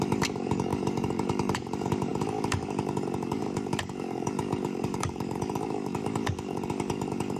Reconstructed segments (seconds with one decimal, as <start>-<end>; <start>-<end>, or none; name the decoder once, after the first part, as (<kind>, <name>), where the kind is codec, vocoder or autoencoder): 0.0-7.4 (codec, DAC)